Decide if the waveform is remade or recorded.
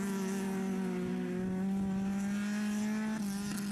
recorded